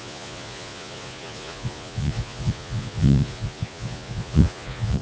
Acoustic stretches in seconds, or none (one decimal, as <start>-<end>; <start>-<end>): none